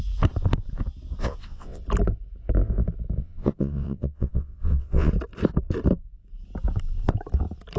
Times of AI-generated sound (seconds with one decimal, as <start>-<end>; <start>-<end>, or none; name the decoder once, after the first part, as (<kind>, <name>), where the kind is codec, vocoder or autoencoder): 1.2-1.8 (vocoder, WaveNeXt); 3.2-5.1